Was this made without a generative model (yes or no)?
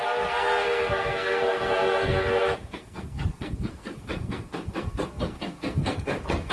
no